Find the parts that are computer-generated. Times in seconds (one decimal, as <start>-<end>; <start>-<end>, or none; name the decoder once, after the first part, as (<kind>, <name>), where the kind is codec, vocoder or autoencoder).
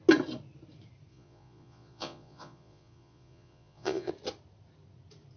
1.1-4.1 (vocoder, Vocos)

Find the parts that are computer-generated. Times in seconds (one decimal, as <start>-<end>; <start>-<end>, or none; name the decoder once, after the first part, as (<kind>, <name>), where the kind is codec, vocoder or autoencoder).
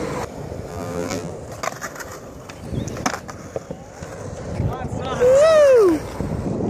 0.7-1.3 (vocoder, BigVGAN v2)